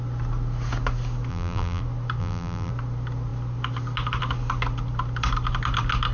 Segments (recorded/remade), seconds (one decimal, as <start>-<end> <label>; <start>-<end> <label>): 0.0-1.3 recorded; 1.3-1.8 remade; 1.8-2.2 recorded; 2.2-2.7 remade; 2.7-6.1 recorded